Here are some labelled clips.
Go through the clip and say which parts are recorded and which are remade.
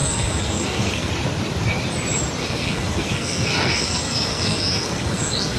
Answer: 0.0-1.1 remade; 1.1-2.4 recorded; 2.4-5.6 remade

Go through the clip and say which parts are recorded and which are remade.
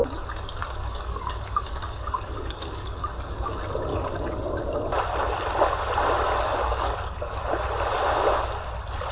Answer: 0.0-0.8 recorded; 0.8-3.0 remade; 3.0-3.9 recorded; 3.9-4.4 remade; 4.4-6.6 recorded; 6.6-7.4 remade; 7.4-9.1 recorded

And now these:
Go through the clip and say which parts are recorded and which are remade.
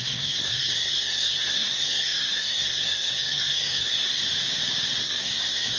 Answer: 0.0-4.2 remade; 4.2-5.0 recorded; 5.0-5.8 remade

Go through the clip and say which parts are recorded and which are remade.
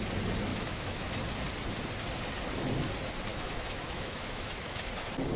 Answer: 0.0-0.5 recorded; 0.5-1.2 remade; 1.2-3.3 recorded; 3.3-4.9 remade; 4.9-5.4 recorded